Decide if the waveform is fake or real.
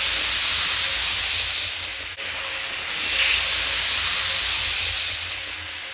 real